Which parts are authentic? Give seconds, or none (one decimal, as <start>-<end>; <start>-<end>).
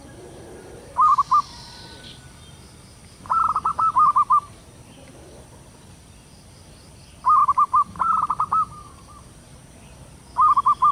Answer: 0.0-3.7; 4.3-7.4; 9.4-10.9